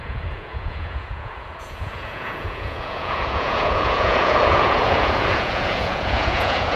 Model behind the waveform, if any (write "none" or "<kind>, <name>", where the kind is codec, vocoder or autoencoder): vocoder, Vocos